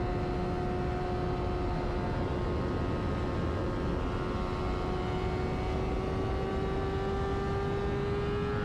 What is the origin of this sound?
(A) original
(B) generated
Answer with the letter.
A